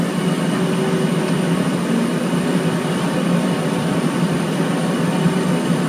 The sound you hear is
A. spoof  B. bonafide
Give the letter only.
B